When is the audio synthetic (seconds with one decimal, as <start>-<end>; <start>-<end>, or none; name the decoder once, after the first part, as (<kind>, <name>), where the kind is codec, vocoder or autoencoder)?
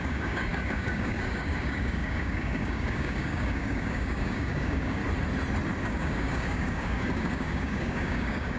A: 0.0-5.0 (codec, DAC); 5.8-8.6